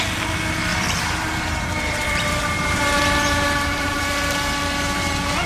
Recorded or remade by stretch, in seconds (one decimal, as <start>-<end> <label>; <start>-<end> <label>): 0.0-0.7 recorded; 0.7-4.0 remade; 4.0-5.5 recorded